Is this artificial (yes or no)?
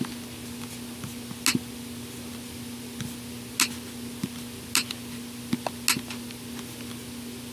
no